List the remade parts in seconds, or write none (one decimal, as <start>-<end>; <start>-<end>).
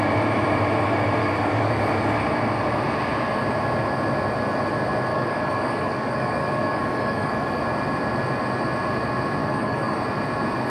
1.2-1.8; 5.1-7.6; 9.4-10.0